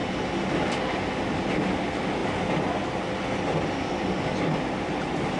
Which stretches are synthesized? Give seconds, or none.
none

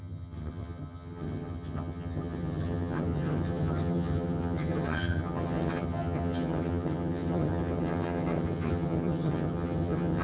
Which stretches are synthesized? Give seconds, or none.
0.0-10.2 (vocoder, HiFi-GAN)

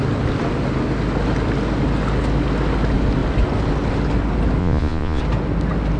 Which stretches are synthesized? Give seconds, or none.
4.6-5.2 (vocoder, Vocos)

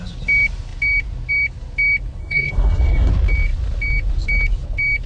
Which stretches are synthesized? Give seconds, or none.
2.2-3.1 (codec, SNAC)

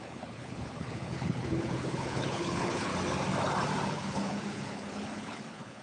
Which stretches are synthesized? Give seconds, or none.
0.0-2.9 (codec, HILCodec); 3.9-5.8